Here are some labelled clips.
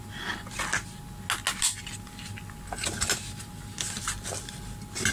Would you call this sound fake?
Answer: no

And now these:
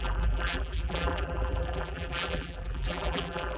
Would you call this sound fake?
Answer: yes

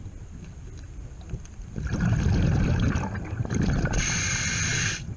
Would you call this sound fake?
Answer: yes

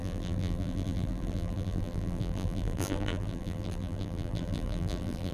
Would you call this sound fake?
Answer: yes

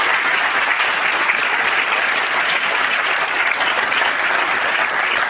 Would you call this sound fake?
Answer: no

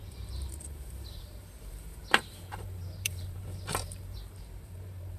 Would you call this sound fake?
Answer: yes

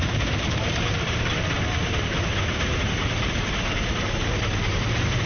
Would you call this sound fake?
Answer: yes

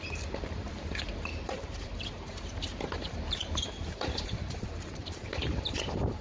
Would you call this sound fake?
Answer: yes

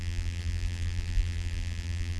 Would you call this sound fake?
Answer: yes